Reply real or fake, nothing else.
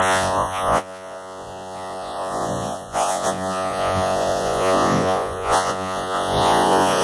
fake